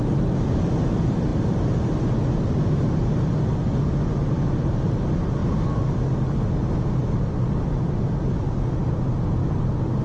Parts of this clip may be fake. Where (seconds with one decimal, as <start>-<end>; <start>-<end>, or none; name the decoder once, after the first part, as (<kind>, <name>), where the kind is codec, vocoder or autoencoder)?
1.3-2.0 (vocoder, BigVGAN v2)